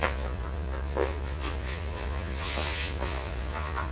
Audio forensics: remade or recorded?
remade